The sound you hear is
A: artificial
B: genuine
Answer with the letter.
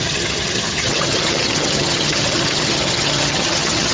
A